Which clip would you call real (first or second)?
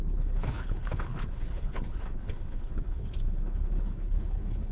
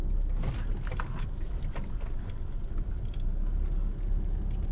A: second